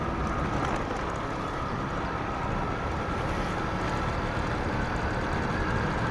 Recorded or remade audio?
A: recorded